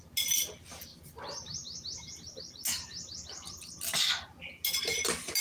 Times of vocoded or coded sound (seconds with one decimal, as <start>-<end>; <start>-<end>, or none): none